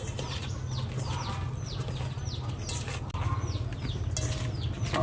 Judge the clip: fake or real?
real